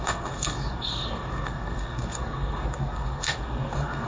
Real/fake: fake